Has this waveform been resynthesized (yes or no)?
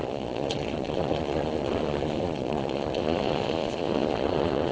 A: yes